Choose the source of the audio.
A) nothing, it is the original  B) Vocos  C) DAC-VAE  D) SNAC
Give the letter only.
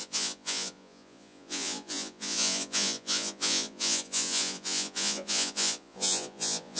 B